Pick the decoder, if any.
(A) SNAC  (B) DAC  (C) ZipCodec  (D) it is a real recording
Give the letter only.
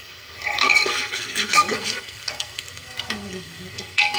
A